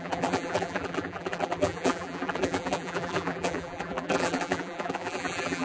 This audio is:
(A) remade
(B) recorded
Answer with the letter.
A